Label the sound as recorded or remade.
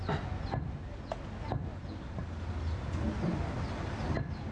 recorded